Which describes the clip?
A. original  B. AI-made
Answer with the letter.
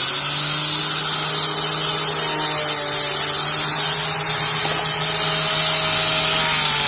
A